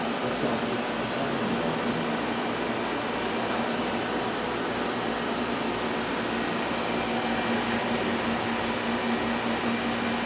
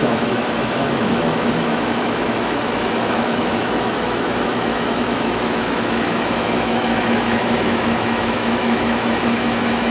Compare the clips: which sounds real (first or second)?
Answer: first